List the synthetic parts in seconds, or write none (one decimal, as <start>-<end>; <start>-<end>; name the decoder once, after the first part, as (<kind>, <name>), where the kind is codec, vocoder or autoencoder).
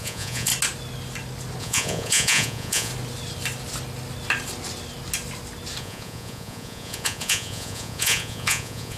0.0-0.5 (vocoder, Vocos); 1.6-2.9; 5.8-9.0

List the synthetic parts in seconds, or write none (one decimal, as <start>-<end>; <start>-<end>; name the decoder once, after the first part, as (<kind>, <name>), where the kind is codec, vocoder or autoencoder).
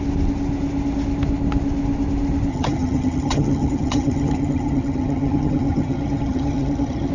2.5-7.1 (vocoder, HiFi-GAN)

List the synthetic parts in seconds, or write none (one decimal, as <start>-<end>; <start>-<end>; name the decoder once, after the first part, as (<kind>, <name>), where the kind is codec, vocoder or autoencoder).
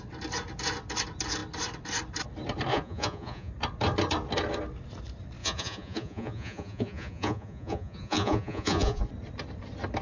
2.7-3.5 (vocoder, Vocos); 5.4-9.0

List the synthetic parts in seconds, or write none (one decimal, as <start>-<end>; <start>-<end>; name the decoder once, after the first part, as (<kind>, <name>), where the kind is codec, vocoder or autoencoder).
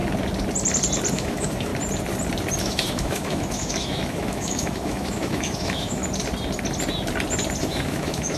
1.1-1.7 (autoencoder, DAC-VAE); 2.6-6.0; 7.6-8.4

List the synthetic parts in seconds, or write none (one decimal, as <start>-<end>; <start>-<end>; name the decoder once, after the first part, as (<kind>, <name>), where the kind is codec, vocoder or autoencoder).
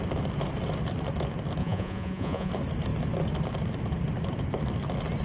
1.6-2.5 (vocoder, Vocos)